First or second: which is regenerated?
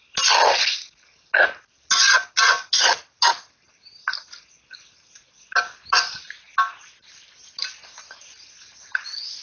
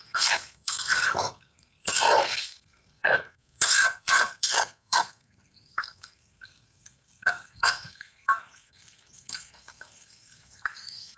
second